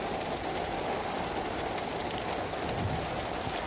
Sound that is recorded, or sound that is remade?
recorded